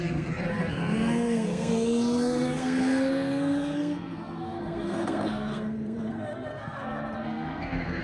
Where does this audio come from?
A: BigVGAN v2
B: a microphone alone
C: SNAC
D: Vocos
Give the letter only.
C